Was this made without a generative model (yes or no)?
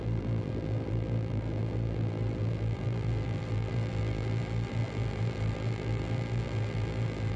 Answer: no